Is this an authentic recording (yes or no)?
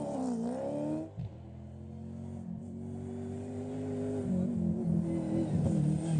yes